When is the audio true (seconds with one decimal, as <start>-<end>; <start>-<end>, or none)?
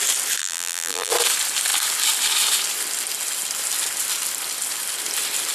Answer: 0.0-0.4; 1.1-5.5